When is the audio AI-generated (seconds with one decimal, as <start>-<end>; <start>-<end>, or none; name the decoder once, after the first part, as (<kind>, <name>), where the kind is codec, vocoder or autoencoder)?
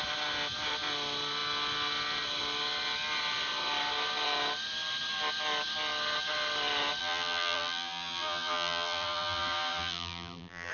7.0-10.7 (vocoder, BigVGAN v2)